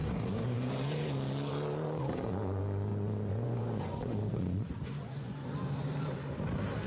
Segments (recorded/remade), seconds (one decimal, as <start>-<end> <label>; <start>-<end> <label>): 0.0-2.9 recorded; 2.9-5.5 remade; 5.5-6.9 recorded